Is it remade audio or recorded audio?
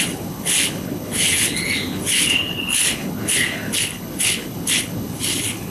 remade